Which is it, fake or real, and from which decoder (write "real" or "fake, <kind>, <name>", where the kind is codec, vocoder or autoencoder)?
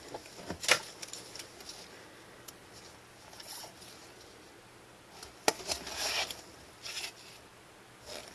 real